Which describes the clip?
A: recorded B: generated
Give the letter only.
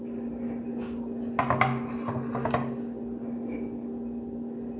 A